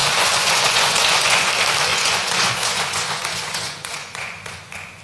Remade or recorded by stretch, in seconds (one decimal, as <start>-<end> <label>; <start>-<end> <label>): 0.0-1.5 remade; 1.5-1.9 recorded; 1.9-5.0 remade